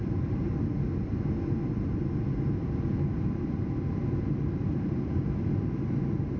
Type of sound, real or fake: real